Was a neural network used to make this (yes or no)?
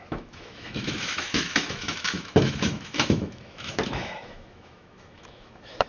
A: yes